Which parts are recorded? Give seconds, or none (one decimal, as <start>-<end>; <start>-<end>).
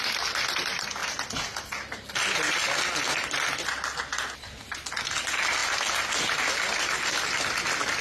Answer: 0.0-8.0